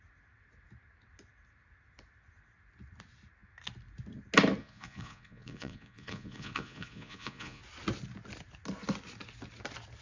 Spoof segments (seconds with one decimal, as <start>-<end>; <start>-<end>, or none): 4.6-7.6